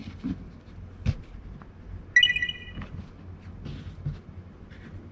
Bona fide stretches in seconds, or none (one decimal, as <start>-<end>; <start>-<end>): 0.0-5.1